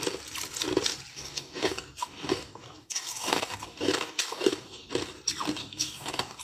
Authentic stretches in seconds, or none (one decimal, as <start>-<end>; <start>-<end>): 0.0-1.1; 4.9-5.6